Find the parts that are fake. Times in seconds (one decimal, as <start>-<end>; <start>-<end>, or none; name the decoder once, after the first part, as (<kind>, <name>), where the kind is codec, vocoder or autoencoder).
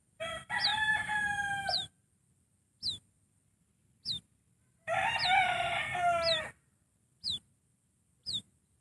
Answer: 0.7-1.9 (vocoder, BigVGAN v2)